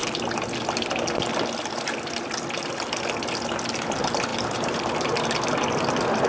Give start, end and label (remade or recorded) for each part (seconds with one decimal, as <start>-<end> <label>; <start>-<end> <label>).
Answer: 0.0-4.3 recorded; 4.3-5.2 remade; 5.2-6.3 recorded